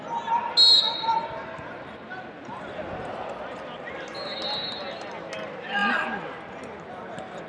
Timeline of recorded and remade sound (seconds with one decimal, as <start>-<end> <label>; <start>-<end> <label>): 0.0-7.5 recorded